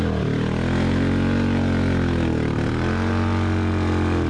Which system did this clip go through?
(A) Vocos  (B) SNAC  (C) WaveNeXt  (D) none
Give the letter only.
D